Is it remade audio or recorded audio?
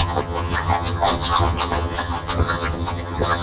remade